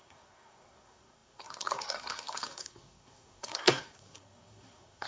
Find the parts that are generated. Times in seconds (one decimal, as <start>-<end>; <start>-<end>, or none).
0.0-5.1